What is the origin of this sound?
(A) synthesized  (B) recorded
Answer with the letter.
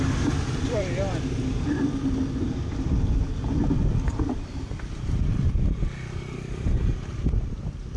A